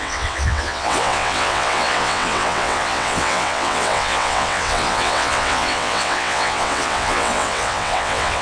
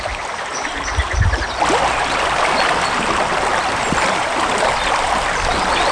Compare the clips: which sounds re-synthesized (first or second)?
first